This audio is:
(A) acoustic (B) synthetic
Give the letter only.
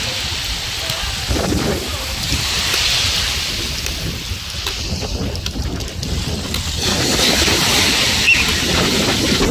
A